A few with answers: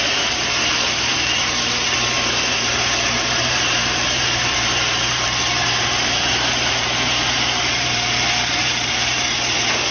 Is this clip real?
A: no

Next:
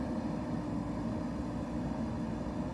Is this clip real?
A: yes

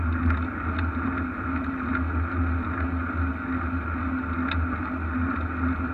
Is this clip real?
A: yes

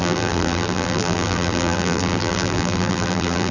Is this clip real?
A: no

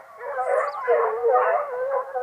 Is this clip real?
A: no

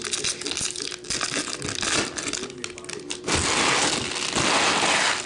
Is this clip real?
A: yes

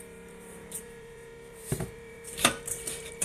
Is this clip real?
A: no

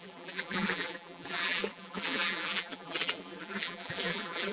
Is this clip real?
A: no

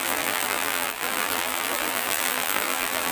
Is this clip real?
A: no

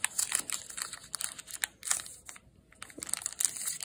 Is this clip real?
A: yes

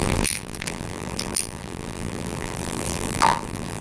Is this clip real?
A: no